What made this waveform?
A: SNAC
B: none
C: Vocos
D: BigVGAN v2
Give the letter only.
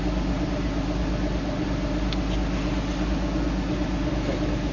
B